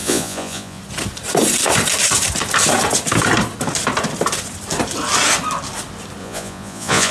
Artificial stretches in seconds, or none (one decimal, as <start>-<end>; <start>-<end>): 0.0-0.8; 6.2-7.1